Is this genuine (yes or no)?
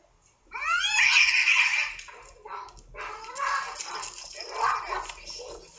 yes